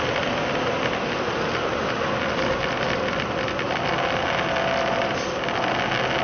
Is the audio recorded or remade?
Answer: recorded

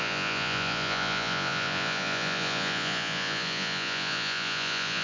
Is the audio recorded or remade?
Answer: remade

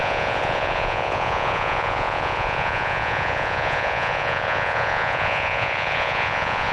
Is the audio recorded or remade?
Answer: remade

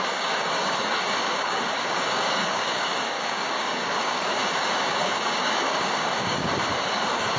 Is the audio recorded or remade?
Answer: remade